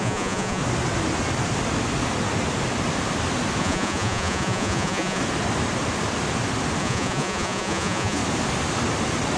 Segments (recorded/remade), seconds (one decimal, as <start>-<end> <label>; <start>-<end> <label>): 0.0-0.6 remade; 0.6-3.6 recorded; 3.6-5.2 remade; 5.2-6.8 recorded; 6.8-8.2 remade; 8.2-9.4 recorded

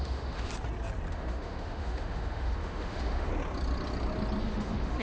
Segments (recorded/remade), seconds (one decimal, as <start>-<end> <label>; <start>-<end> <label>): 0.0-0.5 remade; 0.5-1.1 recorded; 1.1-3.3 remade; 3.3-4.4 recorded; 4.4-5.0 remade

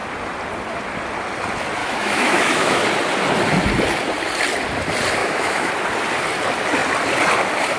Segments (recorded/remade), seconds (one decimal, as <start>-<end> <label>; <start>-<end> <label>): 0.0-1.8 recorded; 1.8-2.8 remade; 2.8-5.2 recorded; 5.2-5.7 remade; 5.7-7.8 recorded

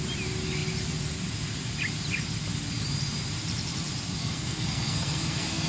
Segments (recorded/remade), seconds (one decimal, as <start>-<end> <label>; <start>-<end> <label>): 0.0-4.2 recorded; 4.2-5.7 remade